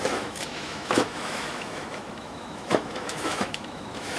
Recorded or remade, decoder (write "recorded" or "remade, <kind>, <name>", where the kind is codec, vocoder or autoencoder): remade, autoencoder, DAC-VAE